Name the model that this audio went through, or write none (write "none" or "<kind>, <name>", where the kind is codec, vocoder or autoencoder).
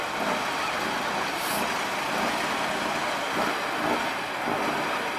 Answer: none